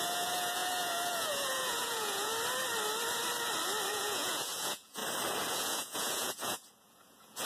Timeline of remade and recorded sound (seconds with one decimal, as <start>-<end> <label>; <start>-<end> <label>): 0.0-2.3 remade; 2.3-3.9 recorded; 3.9-5.0 remade; 5.0-5.5 recorded; 5.5-7.5 remade